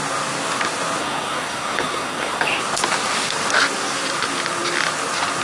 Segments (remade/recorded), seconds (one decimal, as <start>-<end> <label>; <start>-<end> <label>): 0.0-1.0 recorded; 1.0-2.6 remade; 2.6-5.4 recorded